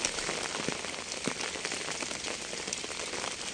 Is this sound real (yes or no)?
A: yes